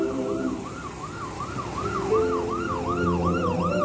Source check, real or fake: fake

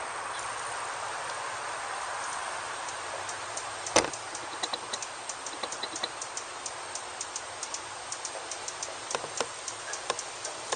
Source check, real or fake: real